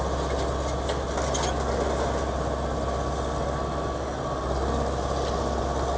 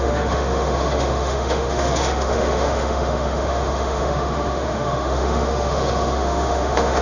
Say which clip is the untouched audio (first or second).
first